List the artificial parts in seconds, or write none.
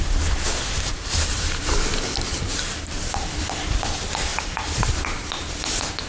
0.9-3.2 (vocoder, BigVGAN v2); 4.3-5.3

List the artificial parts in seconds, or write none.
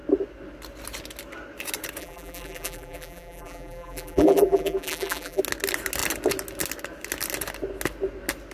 2.0-5.4 (vocoder, BigVGAN v2)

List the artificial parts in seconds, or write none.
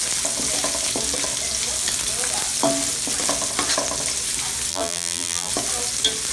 4.7-5.5 (vocoder, BigVGAN v2)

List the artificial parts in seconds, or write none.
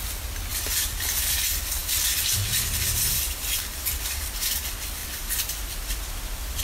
0.5-1.4 (vocoder, BigVGAN v2); 1.8-4.2; 5.0-6.6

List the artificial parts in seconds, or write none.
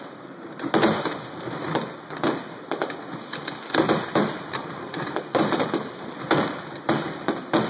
0.0-2.8 (vocoder, BigVGAN v2); 3.8-7.7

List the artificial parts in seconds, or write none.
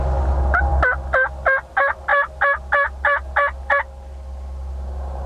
none